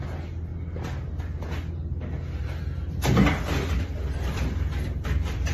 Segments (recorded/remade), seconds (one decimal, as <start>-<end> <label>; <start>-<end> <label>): 0.0-0.5 remade; 0.5-3.8 recorded; 3.8-5.5 remade